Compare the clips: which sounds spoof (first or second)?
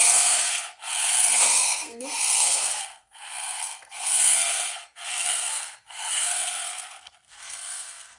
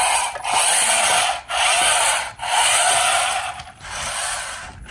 first